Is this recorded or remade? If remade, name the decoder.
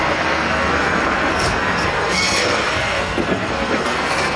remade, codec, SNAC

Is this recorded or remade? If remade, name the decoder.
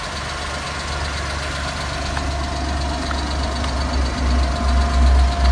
recorded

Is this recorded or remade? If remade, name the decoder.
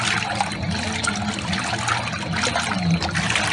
recorded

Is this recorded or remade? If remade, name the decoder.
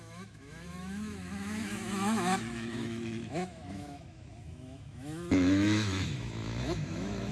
remade, autoencoder, DAC-VAE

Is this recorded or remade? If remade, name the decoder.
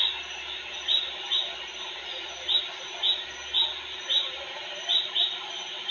recorded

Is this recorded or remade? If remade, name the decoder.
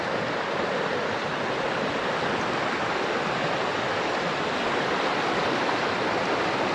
recorded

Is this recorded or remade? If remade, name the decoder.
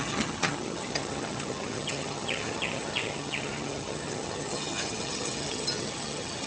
remade, vocoder, HiFi-GAN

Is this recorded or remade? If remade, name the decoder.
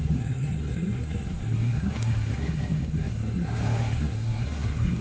remade, codec, SNAC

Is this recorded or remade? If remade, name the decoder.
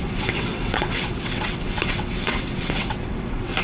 remade, vocoder, WaveNeXt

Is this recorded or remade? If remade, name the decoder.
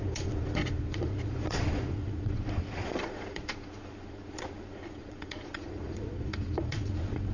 remade, vocoder, Vocos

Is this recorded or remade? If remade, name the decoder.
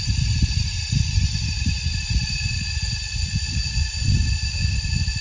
recorded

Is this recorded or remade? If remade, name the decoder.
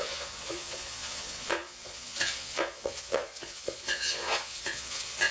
remade, vocoder, Vocos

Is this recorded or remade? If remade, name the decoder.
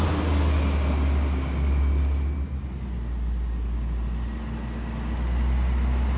recorded